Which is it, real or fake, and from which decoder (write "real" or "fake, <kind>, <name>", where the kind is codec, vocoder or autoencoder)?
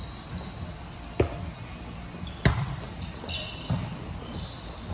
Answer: real